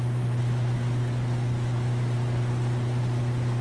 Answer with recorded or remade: recorded